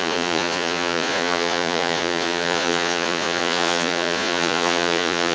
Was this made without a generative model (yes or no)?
no